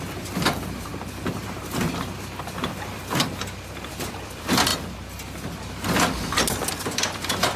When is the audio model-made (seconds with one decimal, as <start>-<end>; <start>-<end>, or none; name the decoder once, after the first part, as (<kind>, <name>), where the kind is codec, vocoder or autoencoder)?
0.0-0.9 (vocoder, BigVGAN v2); 3.9-4.7; 5.6-7.6